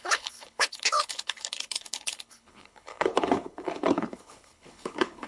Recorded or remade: remade